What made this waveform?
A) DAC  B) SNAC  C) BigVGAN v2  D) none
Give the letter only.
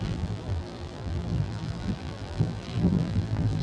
C